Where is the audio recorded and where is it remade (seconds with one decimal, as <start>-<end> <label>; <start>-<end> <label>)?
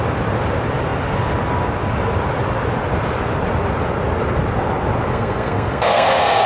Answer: 0.0-5.1 recorded; 5.1-6.5 remade